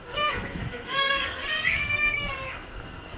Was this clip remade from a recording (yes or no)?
yes